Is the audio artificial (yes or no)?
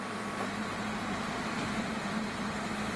no